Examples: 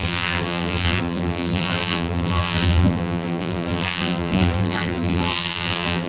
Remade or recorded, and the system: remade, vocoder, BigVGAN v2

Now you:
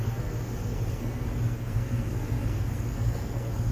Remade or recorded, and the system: remade, codec, SNAC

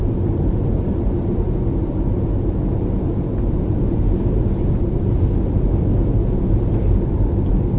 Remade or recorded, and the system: recorded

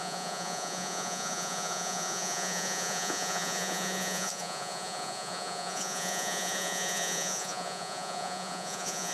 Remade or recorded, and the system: remade, vocoder, Vocos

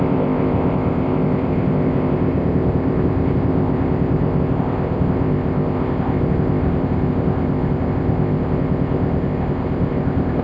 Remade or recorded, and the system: remade, codec, ZipCodec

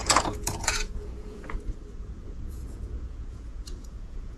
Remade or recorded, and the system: remade, vocoder, Vocos